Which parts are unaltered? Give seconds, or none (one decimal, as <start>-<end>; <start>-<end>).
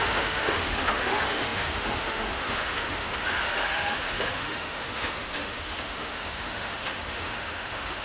none